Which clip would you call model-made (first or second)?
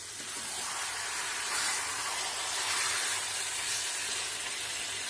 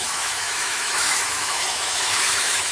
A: second